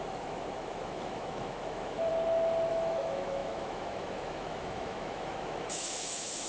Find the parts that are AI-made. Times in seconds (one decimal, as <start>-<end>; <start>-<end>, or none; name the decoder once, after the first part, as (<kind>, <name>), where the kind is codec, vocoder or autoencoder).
0.0-2.1 (autoencoder, DAC-VAE); 2.7-6.5